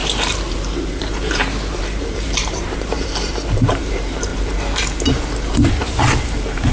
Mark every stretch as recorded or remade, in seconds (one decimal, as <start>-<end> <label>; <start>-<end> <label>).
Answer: 0.0-0.5 recorded; 0.5-4.3 remade; 4.3-5.8 recorded; 5.8-6.7 remade